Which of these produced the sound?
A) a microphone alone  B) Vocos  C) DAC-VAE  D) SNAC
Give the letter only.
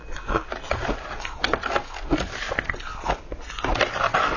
A